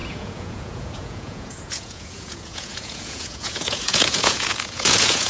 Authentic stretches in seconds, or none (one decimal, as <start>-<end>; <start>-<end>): none